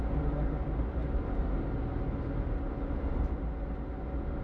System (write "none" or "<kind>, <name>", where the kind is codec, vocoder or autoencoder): none